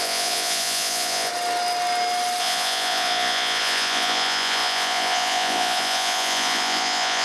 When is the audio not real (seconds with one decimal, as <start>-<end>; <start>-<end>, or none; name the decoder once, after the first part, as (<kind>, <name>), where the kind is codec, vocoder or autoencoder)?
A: 0.0-1.3 (vocoder, Vocos); 2.4-7.2